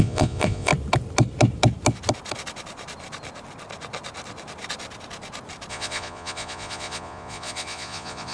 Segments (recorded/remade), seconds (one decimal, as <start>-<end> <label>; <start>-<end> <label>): 0.0-0.7 remade; 0.7-5.7 recorded; 5.7-8.3 remade